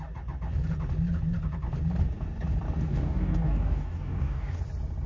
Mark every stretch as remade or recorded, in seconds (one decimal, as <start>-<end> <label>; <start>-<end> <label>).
0.0-2.9 recorded; 2.9-4.6 remade; 4.6-5.1 recorded